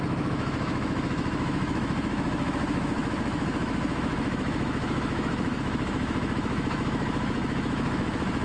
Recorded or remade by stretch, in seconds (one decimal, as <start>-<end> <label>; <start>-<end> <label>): 0.0-8.4 remade